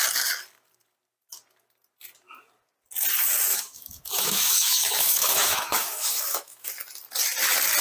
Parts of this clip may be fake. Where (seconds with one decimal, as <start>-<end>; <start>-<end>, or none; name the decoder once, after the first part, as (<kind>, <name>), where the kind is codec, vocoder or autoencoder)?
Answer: 3.5-6.7 (autoencoder, DAC-VAE)